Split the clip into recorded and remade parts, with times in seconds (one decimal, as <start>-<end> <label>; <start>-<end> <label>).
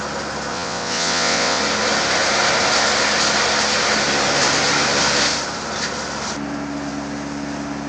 0.0-0.5 recorded; 0.5-1.6 remade; 1.6-7.9 recorded